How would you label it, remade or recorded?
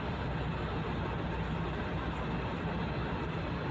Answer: recorded